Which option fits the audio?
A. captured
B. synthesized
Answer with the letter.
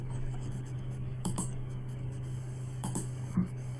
B